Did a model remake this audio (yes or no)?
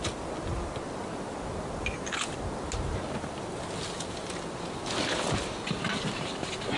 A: no